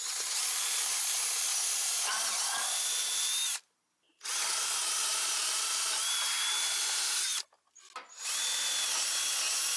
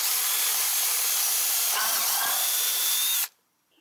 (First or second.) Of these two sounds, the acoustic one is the first